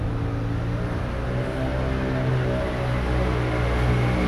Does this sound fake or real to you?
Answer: real